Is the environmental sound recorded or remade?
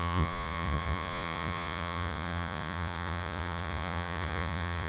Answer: remade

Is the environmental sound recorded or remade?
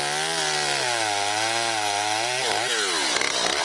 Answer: recorded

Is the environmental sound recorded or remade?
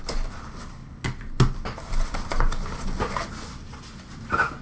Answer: recorded